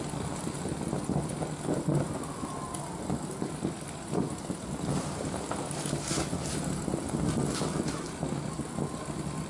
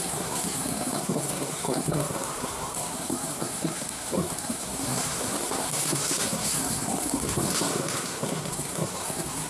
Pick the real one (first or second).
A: first